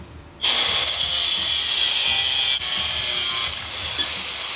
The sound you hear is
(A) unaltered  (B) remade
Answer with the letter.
A